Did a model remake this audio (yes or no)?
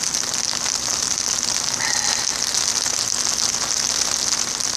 no